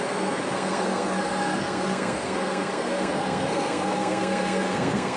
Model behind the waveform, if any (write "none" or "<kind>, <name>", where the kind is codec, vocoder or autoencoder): codec, SNAC